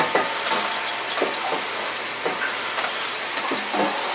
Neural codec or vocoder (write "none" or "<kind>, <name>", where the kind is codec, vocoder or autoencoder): none